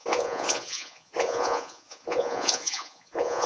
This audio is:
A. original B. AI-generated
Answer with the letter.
B